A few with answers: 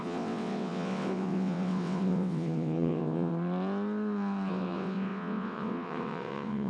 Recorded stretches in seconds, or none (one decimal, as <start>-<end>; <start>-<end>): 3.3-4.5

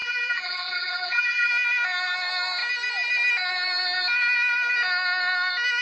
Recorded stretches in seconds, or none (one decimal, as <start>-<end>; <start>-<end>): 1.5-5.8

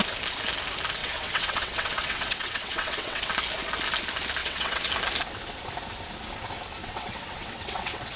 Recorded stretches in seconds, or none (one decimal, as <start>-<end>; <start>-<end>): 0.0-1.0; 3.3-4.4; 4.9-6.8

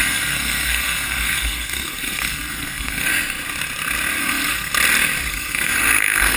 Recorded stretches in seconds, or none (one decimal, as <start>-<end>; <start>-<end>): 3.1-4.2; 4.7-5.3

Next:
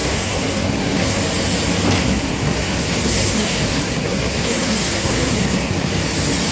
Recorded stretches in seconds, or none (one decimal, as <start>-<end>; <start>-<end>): 1.2-2.0; 5.9-6.5

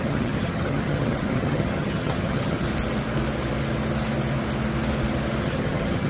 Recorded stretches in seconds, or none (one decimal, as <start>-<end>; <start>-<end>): 2.7-5.4